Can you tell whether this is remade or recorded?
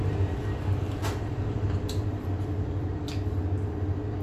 recorded